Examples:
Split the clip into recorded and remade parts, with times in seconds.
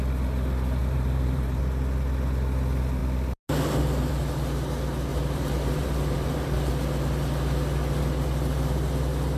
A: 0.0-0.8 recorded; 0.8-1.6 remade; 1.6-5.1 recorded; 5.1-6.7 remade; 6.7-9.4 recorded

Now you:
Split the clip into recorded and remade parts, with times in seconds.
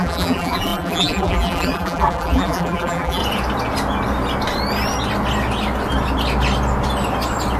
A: 0.0-3.2 remade; 3.2-7.6 recorded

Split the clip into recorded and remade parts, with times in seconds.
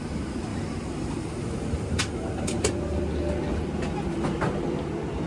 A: 0.0-0.5 recorded; 0.5-3.0 remade; 3.0-5.3 recorded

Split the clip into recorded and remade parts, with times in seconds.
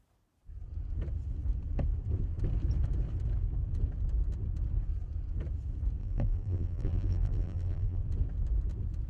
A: 0.0-6.0 recorded; 6.0-8.0 remade; 8.0-9.1 recorded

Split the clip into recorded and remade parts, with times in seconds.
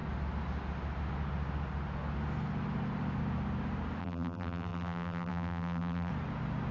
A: 0.0-4.0 recorded; 4.0-6.1 remade; 6.1-6.7 recorded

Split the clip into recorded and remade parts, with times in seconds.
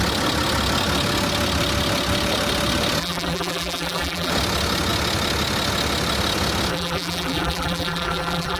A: 0.0-3.0 recorded; 3.0-4.3 remade; 4.3-6.7 recorded; 6.7-8.6 remade